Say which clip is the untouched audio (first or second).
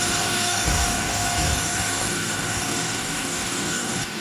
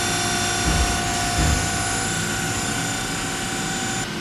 second